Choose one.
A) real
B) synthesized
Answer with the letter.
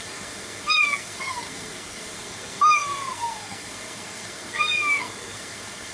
B